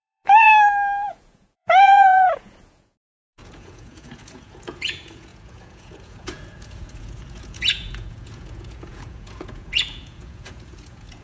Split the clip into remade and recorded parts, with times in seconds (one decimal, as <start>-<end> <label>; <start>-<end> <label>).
0.0-0.5 remade; 0.5-1.1 recorded; 1.1-11.2 remade